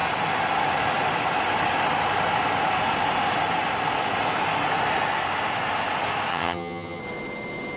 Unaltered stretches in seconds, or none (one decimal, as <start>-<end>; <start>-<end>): 0.0-6.3; 7.0-7.8